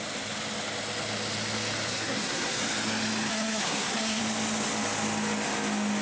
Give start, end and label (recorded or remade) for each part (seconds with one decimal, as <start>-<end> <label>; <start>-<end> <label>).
0.0-1.9 recorded; 1.9-2.6 remade; 2.6-3.3 recorded; 3.3-4.2 remade; 4.2-6.0 recorded